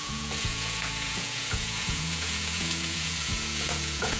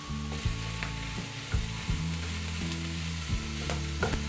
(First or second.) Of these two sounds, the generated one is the first